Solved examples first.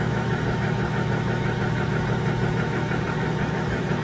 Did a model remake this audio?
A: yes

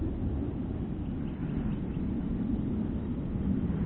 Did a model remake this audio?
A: no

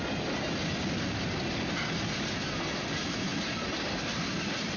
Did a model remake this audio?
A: no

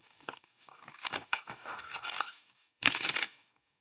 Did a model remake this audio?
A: yes